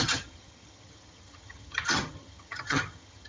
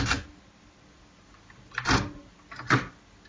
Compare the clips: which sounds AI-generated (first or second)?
first